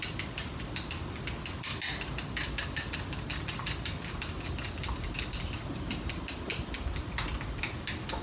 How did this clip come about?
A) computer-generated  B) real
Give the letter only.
B